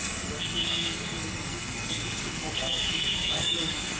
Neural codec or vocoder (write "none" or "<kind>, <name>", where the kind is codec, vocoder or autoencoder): codec, SNAC